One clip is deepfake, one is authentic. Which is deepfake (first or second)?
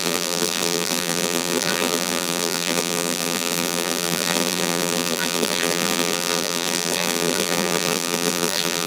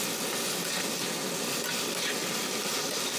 first